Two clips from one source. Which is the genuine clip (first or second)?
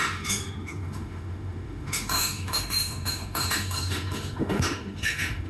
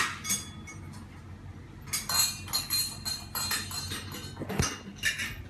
second